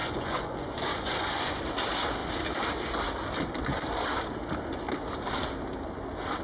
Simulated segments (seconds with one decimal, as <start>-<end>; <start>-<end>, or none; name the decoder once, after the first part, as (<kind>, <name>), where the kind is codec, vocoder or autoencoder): 0.0-1.6 (vocoder, Vocos)